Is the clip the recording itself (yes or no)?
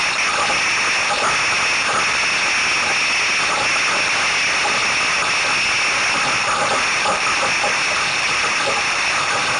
yes